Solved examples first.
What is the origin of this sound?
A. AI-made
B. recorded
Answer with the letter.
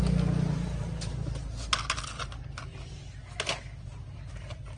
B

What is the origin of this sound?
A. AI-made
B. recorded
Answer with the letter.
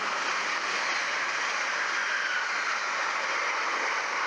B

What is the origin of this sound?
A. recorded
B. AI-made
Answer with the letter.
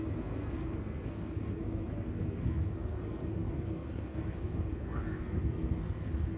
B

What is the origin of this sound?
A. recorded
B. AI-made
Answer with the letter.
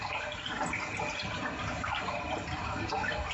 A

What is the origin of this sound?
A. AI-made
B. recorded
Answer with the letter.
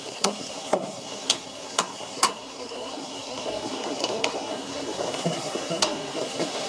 A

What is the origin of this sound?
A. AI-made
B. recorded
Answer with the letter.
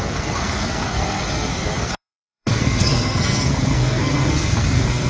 A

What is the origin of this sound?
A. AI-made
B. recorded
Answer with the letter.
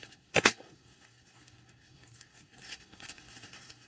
A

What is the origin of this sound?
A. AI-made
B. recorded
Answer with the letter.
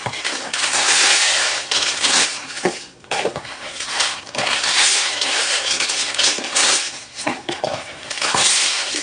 A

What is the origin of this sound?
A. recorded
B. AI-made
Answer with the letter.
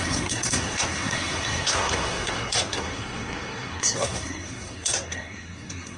B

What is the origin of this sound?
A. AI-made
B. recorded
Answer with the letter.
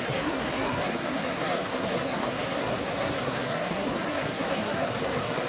A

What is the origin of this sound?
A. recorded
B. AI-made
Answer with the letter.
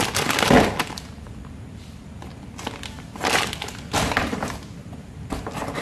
A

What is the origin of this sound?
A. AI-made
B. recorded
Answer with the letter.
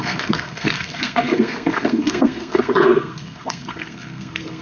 A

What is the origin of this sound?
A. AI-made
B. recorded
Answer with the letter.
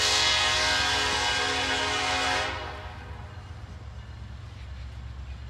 B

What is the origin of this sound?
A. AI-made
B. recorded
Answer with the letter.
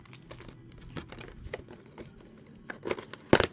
B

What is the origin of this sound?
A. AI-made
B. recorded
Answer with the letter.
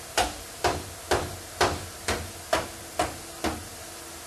B